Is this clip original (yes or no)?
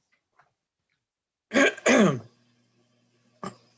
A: yes